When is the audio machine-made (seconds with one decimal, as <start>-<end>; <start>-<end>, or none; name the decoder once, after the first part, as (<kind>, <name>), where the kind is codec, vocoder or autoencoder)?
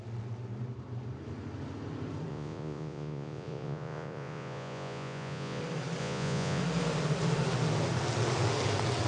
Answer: 2.3-5.6 (vocoder, Vocos); 6.0-6.6